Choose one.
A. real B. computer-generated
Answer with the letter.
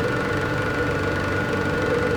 A